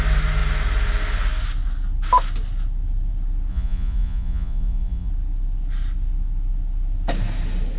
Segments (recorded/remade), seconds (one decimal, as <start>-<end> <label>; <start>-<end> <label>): 0.0-3.5 recorded; 3.5-5.1 remade; 5.1-7.8 recorded